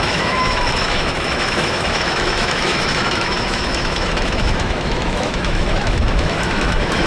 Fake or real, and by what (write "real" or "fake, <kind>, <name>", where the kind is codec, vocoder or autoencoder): fake, autoencoder, DAC-VAE